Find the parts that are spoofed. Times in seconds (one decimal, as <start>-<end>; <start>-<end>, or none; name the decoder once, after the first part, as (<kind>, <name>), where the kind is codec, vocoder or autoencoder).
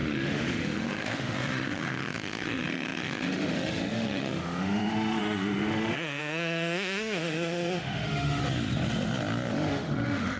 0.0-8.4 (autoencoder, DAC-VAE); 9.5-10.4